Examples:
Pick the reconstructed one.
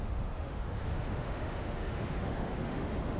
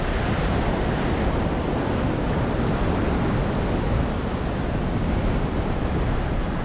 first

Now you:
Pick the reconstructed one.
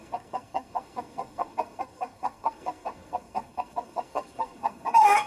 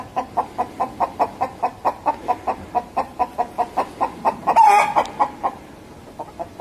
first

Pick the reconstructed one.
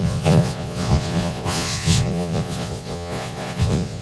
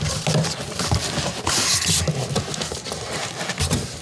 first